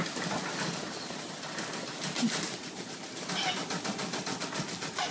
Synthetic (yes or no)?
no